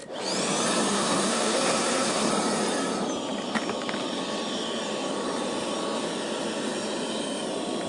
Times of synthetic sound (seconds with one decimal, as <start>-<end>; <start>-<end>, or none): 0.9-2.3